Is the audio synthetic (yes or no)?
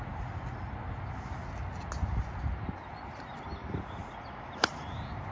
no